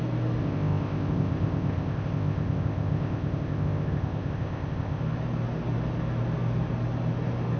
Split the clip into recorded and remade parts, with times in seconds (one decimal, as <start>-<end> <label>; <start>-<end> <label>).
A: 0.0-0.4 recorded; 0.4-5.0 remade; 5.0-7.6 recorded